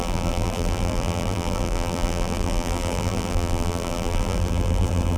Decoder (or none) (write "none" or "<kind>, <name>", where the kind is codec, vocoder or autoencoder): vocoder, BigVGAN v2